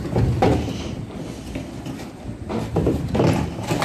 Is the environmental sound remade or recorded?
recorded